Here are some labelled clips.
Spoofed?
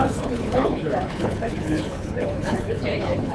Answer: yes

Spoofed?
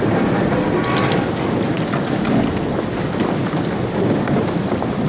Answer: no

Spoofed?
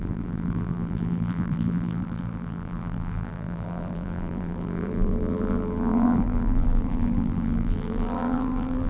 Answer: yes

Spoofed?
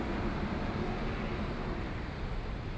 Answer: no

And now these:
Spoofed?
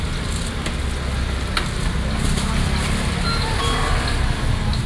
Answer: no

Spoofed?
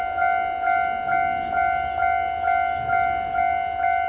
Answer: no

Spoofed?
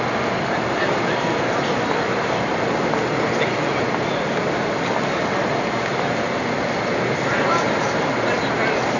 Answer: no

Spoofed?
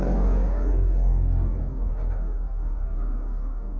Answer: yes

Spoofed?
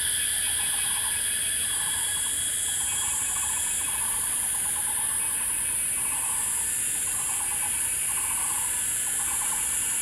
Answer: no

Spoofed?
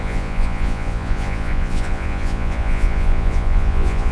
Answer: yes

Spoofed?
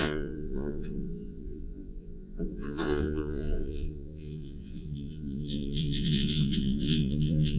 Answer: yes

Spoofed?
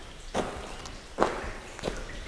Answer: no